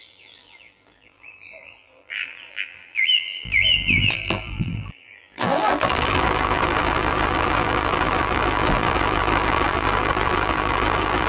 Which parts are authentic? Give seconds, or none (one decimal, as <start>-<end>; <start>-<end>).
none